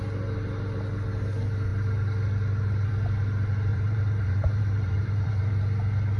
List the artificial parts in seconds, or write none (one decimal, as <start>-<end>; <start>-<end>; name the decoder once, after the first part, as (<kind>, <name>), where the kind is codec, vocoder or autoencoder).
3.7-5.6 (vocoder, BigVGAN v2)